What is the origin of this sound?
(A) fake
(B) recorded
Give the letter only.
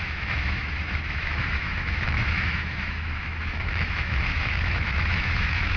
A